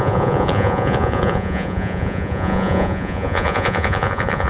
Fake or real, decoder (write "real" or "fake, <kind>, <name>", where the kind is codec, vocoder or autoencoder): fake, vocoder, Vocos